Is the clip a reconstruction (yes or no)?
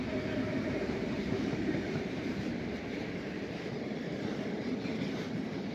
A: yes